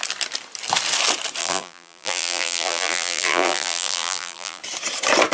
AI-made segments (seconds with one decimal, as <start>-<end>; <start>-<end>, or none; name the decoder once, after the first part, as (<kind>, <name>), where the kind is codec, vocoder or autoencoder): 1.4-4.6 (vocoder, BigVGAN v2)